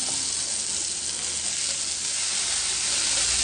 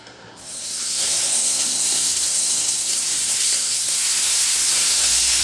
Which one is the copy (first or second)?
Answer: second